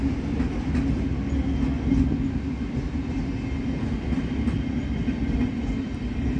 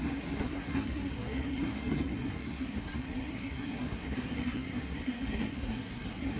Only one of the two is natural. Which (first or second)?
first